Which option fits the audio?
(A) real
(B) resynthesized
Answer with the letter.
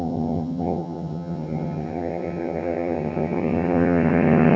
B